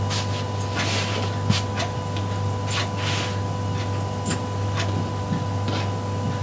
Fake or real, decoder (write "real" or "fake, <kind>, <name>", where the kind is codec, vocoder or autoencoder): real